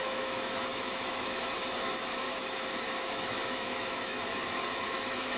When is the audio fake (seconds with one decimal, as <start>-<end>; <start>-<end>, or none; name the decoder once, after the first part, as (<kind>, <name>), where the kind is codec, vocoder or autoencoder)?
0.0-5.4 (autoencoder, DAC-VAE)